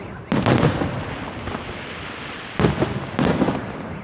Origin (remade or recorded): recorded